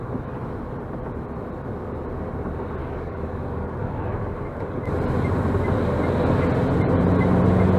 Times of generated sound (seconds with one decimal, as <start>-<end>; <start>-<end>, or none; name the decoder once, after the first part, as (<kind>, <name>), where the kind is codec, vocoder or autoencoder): 2.8-4.8 (codec, DAC)